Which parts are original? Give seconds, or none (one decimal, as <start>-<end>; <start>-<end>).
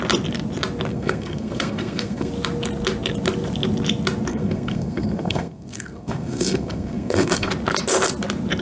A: 0.0-0.9; 2.3-4.3; 7.5-8.6